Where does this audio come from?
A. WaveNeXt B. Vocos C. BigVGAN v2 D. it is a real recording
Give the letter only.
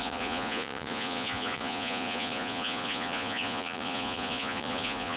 B